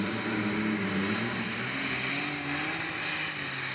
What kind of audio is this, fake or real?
real